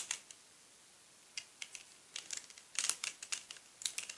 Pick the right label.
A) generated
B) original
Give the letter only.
B